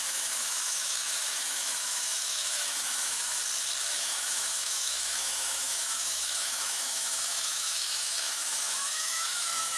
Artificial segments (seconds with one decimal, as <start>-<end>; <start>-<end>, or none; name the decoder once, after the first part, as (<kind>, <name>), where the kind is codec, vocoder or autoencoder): 0.0-3.4 (autoencoder, DAC-VAE); 3.9-9.8